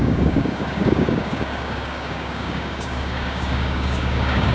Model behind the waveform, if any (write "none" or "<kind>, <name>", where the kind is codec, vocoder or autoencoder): codec, DAC